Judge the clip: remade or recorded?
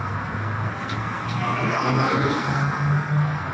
remade